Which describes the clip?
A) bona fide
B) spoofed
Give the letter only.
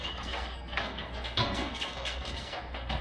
B